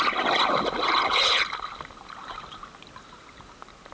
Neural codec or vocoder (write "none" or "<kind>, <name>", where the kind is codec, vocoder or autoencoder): none